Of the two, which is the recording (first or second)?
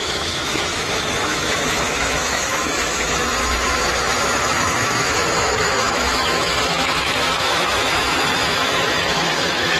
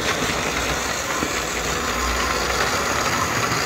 second